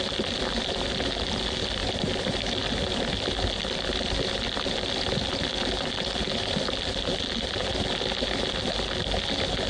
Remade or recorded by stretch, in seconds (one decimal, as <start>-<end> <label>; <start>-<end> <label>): 0.0-9.7 recorded